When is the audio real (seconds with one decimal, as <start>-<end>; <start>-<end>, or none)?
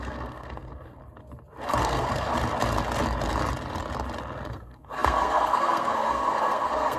1.0-1.8; 2.3-4.5